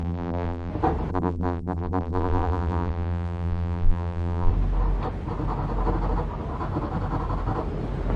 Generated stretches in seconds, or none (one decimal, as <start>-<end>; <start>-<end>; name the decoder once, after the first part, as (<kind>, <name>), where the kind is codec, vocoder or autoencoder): 0.0-0.7 (vocoder, BigVGAN v2); 1.1-4.5